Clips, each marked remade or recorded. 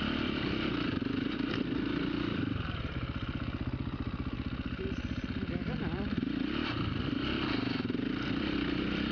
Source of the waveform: remade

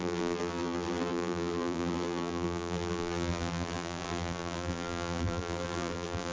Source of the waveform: remade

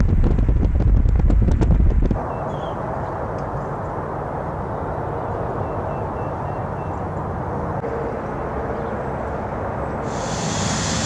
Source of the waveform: recorded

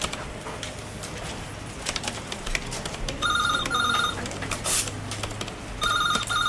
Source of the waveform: recorded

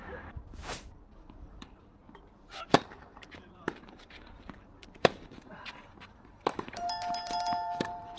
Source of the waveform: remade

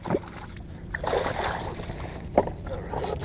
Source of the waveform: recorded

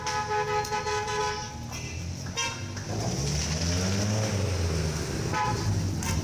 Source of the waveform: recorded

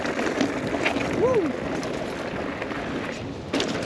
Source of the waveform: recorded